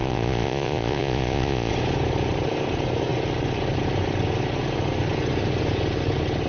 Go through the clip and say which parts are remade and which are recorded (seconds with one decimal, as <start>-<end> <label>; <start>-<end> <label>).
0.0-1.7 remade; 1.7-6.5 recorded